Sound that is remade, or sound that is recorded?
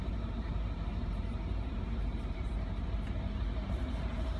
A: remade